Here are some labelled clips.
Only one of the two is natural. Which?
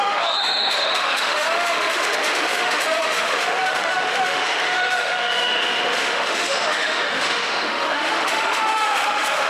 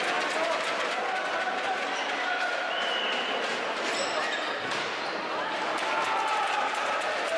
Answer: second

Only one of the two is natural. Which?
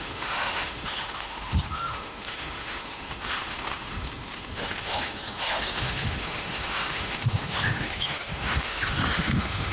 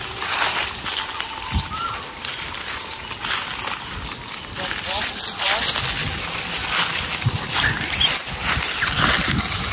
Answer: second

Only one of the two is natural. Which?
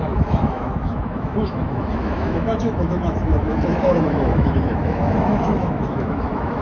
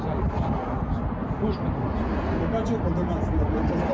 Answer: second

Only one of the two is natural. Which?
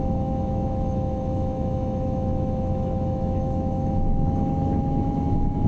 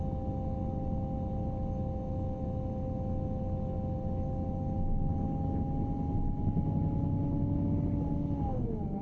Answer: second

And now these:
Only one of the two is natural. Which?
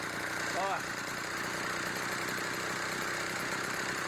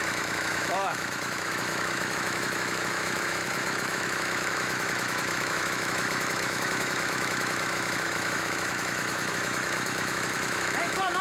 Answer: first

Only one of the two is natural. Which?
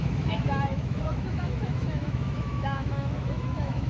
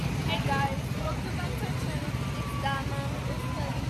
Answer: second